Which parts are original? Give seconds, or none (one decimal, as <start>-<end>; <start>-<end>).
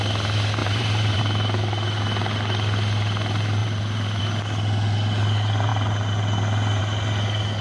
0.0-0.6; 1.2-3.6; 4.2-7.6